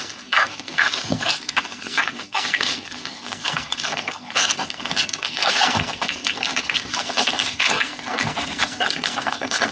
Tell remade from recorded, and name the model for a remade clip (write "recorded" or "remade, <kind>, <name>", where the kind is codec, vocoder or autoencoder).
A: remade, codec, SNAC